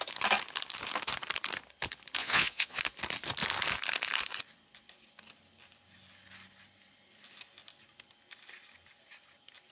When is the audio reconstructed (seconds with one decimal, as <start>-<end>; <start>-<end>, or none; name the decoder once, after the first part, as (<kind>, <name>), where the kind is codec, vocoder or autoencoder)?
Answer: 2.2-2.8 (vocoder, Vocos)